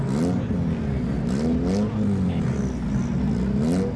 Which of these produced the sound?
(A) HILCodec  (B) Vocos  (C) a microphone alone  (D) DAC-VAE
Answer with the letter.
C